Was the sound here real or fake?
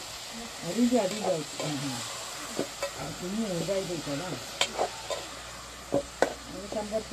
real